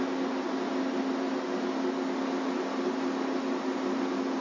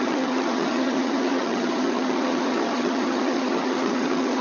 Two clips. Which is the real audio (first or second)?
first